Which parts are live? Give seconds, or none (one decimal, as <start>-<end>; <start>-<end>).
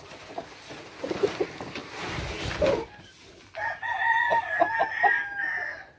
0.0-6.0